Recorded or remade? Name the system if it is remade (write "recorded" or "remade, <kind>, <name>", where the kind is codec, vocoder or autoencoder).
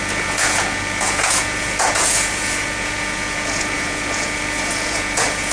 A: remade, vocoder, Vocos